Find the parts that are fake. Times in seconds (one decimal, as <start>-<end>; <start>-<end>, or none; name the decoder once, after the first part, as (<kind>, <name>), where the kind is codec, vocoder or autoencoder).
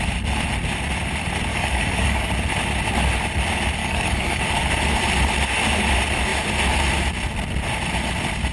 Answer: 1.5-2.3 (codec, DAC); 3.8-4.4